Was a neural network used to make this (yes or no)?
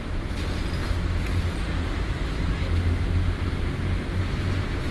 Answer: no